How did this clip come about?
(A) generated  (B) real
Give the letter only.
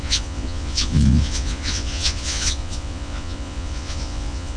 A